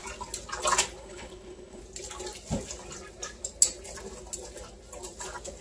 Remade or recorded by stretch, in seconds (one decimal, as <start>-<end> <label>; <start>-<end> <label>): 0.0-1.0 recorded; 1.0-1.8 remade; 1.8-5.6 recorded